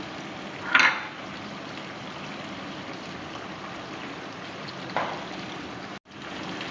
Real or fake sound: real